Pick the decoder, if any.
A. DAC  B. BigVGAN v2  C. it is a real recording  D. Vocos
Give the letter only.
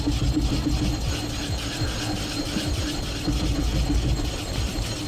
C